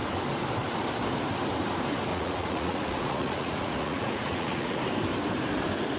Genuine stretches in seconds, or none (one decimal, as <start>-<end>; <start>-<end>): 0.0-2.1; 4.8-6.0